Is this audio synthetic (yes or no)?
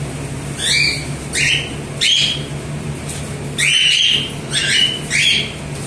no